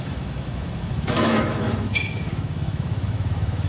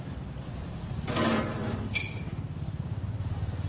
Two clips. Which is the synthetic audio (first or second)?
first